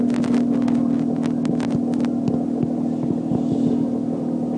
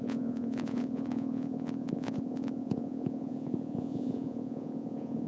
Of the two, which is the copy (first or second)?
second